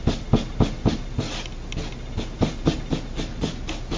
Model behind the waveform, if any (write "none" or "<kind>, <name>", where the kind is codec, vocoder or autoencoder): none